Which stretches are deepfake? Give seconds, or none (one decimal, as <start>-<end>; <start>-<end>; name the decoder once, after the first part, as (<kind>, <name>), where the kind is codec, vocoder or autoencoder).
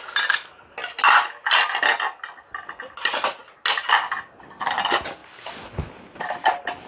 none